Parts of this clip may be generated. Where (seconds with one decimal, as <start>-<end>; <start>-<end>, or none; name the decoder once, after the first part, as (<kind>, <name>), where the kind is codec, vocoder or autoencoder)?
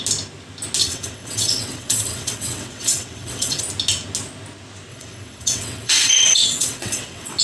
0.8-3.6 (vocoder, WaveNeXt); 4.9-7.4